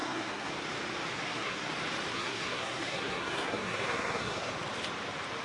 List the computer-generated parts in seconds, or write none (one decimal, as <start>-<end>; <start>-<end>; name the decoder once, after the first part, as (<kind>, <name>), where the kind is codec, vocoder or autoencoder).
0.0-0.5 (codec, SNAC); 1.1-1.7; 2.1-4.5